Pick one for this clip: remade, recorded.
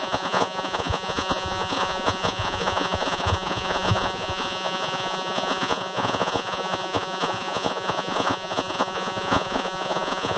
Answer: remade